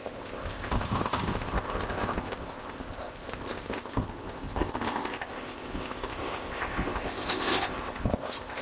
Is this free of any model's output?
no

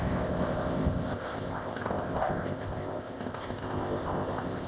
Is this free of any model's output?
no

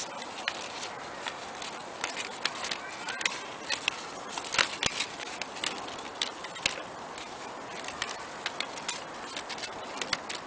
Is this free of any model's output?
yes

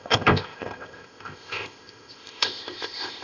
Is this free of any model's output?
no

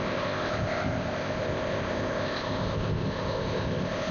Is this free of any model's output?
no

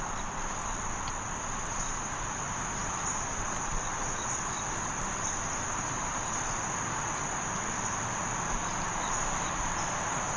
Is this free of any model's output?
yes